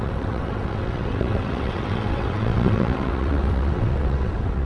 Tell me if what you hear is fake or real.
fake